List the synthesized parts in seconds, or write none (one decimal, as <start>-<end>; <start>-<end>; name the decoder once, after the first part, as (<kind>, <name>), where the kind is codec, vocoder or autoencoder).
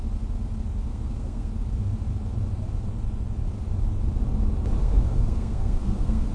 0.9-1.5 (codec, SNAC); 4.8-6.3